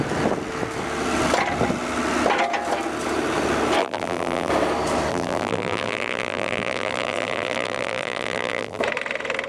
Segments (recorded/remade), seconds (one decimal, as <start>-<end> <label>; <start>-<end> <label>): 0.0-3.8 recorded; 3.8-4.5 remade; 4.5-5.1 recorded; 5.1-8.8 remade; 8.8-9.5 recorded